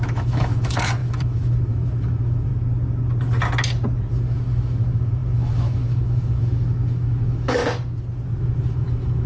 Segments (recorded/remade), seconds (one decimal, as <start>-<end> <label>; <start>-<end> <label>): 0.0-2.5 remade; 2.5-4.1 recorded; 4.1-7.6 remade; 7.6-8.4 recorded; 8.4-9.3 remade